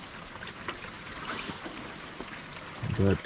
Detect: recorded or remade recorded